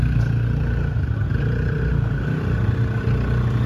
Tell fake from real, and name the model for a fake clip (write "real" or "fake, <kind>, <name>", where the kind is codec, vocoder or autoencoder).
real